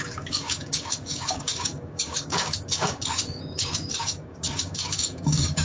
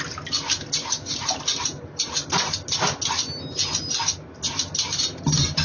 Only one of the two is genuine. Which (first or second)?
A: second